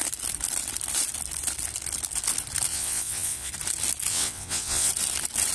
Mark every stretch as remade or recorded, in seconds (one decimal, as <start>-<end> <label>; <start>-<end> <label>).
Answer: 0.0-2.7 recorded; 2.7-3.5 remade; 3.5-4.1 recorded; 4.1-4.9 remade; 4.9-5.5 recorded